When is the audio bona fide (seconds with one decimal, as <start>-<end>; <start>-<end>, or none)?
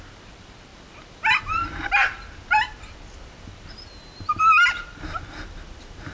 0.0-6.1